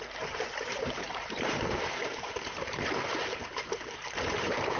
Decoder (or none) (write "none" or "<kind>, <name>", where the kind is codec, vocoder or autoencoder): vocoder, BigVGAN v2